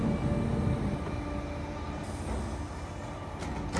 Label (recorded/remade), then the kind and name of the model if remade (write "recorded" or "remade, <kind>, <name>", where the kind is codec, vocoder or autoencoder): recorded